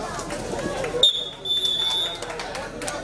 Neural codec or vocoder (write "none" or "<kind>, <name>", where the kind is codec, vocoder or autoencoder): none